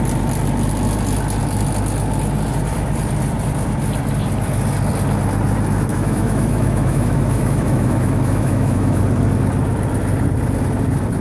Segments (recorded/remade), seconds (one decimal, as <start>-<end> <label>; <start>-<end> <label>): 0.0-5.9 recorded; 5.9-9.0 remade; 9.0-11.2 recorded